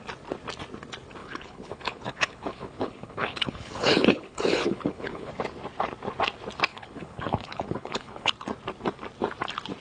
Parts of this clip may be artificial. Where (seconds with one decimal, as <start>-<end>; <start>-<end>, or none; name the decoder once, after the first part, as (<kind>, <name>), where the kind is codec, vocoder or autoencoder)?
1.2-5.3 (codec, HILCodec); 6.7-8.3